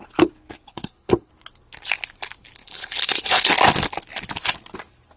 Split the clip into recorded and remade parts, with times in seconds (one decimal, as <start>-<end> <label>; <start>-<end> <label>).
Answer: 0.0-0.7 recorded; 0.7-1.3 remade; 1.3-2.6 recorded; 2.6-3.5 remade; 3.5-5.2 recorded